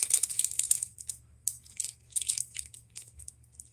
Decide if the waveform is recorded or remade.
remade